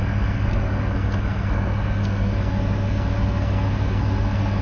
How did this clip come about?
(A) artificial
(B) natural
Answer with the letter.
A